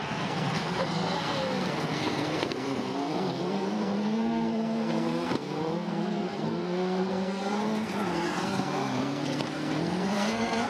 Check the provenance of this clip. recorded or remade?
remade